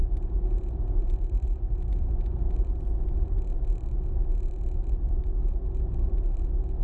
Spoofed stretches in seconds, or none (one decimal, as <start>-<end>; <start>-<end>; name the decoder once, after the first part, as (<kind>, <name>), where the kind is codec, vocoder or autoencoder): 0.0-1.1 (vocoder, BigVGAN v2)